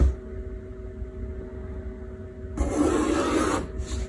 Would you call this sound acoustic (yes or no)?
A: yes